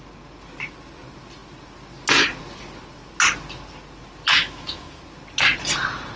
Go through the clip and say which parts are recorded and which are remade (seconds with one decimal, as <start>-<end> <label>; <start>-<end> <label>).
0.0-4.3 recorded; 4.3-5.0 remade; 5.0-6.2 recorded